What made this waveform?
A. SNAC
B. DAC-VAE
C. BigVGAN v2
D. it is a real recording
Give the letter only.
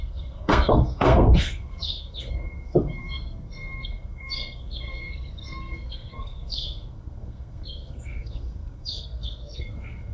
A